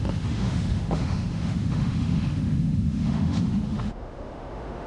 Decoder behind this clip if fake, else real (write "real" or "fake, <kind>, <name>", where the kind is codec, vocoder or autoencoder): fake, autoencoder, DAC-VAE